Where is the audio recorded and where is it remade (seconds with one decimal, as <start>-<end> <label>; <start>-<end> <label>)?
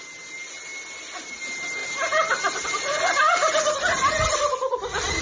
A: 0.0-1.8 recorded; 1.8-5.2 remade